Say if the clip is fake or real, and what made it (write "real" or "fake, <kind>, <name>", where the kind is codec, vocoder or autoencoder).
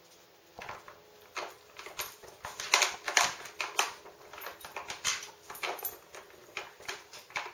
real